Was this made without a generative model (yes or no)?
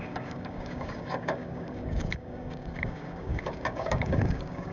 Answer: no